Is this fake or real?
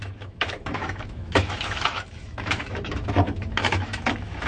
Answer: fake